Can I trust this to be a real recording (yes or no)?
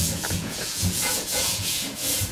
no